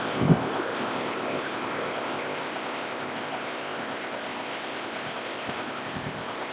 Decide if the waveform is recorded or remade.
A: remade